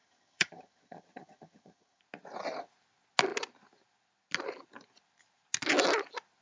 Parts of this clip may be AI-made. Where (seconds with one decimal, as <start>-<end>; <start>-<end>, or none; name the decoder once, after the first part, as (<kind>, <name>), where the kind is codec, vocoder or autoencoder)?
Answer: 0.0-2.0 (vocoder, HiFi-GAN)